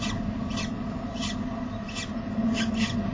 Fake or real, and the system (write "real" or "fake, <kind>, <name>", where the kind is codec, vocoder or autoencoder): real